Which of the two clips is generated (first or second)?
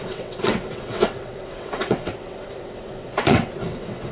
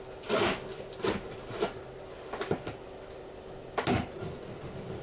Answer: first